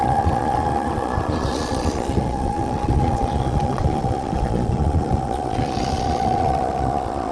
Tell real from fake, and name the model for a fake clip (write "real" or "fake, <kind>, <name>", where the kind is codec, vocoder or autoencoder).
fake, vocoder, Vocos